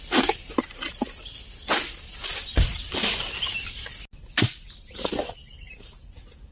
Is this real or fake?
real